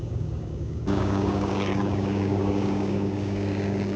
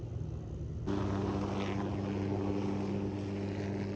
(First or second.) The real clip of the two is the second